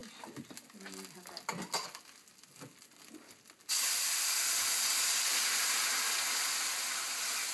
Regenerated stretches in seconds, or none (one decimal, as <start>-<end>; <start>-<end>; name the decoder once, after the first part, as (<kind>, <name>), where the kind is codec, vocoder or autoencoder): none